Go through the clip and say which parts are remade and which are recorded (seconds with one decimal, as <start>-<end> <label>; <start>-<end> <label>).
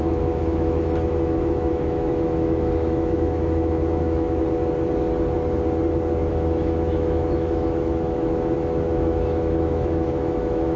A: 0.0-4.4 remade; 4.4-6.3 recorded; 6.3-10.8 remade